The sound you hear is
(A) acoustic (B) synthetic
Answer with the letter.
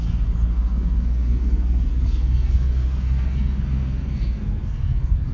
B